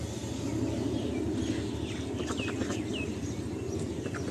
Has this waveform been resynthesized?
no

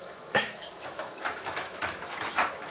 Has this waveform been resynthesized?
yes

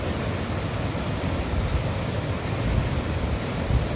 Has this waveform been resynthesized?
no